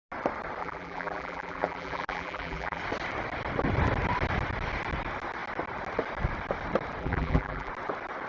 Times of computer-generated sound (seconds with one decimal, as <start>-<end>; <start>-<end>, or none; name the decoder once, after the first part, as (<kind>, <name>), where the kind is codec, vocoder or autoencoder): 0.6-2.8 (vocoder, BigVGAN v2); 7.0-7.7